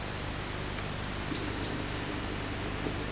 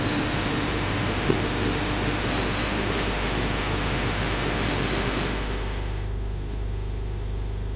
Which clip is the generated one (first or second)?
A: second